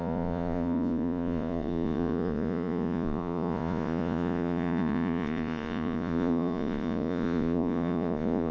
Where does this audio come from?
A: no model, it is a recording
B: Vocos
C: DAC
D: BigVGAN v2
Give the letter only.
B